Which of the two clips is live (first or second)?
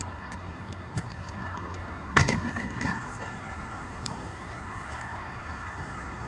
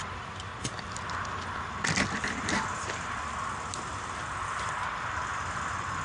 second